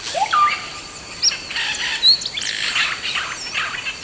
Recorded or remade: recorded